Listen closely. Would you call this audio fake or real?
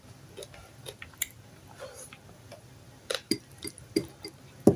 real